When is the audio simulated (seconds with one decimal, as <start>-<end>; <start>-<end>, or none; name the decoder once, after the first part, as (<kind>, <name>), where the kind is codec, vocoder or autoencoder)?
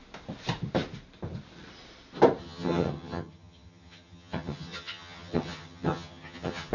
2.4-6.7 (vocoder, HiFi-GAN)